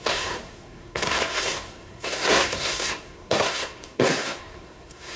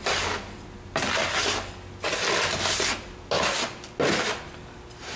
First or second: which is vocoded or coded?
first